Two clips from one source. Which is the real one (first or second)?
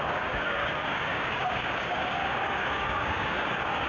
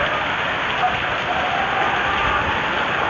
second